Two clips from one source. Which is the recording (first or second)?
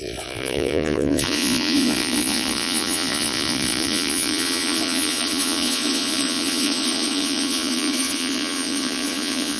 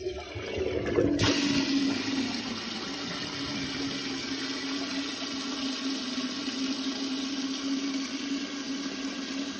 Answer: second